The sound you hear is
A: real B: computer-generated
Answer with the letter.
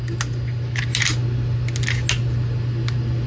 A